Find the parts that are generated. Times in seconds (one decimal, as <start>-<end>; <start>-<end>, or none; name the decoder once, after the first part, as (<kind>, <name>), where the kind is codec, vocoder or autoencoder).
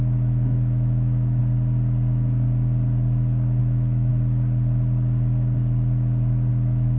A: 0.0-1.4 (autoencoder, DAC-VAE); 3.6-4.1; 6.5-7.0